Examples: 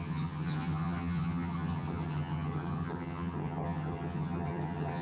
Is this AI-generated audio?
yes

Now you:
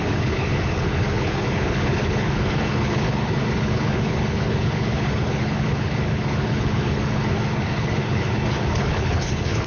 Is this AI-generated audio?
yes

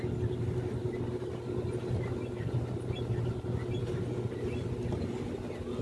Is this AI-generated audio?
no